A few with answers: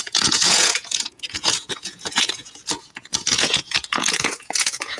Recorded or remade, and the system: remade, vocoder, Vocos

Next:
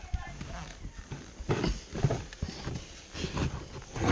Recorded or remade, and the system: recorded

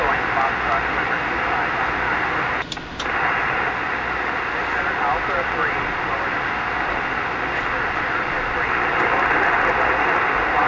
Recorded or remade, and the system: recorded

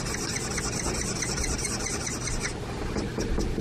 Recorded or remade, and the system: recorded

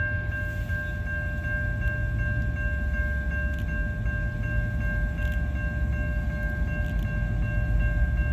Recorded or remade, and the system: recorded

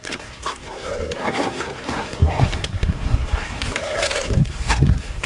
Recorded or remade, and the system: remade, codec, SNAC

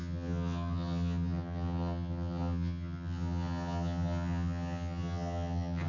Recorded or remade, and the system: remade, vocoder, HiFi-GAN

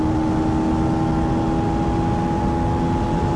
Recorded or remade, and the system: recorded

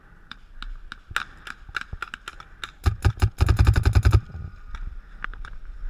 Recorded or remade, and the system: recorded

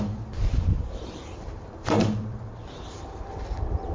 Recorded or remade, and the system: remade, vocoder, BigVGAN v2